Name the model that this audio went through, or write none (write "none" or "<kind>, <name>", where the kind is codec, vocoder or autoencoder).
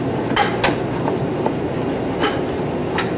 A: none